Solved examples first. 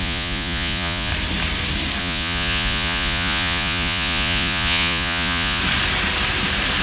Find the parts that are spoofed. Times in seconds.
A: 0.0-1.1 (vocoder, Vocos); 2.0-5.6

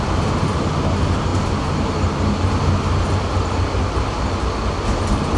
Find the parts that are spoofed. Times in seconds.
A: none

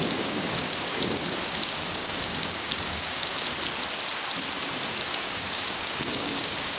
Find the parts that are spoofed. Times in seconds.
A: 0.0-3.3 (codec, DAC); 4.9-6.8

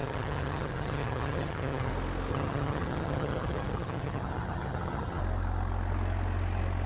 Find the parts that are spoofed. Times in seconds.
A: 0.0-1.9 (vocoder, HiFi-GAN); 2.3-5.2

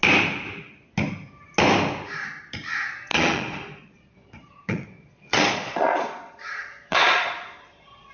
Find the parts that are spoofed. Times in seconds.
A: 3.1-8.1 (vocoder, Vocos)

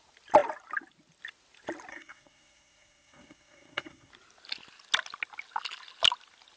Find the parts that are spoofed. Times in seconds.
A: 1.9-4.1 (codec, SNAC)